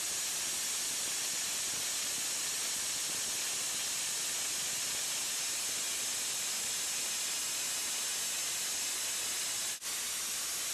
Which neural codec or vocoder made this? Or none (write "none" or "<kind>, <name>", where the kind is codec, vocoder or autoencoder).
none